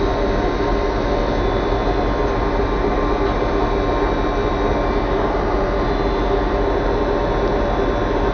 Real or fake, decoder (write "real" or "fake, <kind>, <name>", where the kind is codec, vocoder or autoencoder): real